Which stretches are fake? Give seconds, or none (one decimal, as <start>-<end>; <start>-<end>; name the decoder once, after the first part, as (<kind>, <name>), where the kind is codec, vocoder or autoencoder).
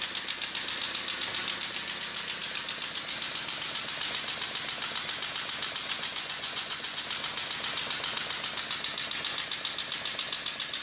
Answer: 5.8-7.0 (vocoder, Vocos)